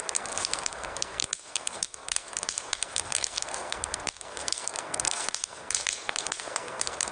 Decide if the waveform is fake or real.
fake